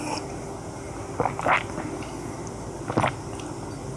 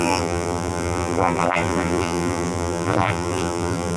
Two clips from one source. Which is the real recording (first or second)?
first